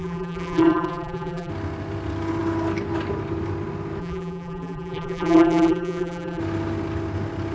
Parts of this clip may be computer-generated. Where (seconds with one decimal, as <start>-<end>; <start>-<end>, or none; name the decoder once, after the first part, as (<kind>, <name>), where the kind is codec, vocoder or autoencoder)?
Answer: 0.0-1.5 (vocoder, BigVGAN v2); 4.0-6.4